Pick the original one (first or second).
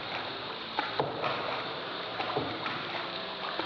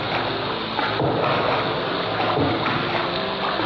second